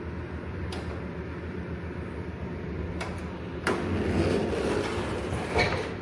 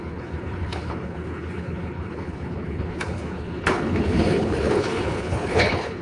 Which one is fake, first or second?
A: second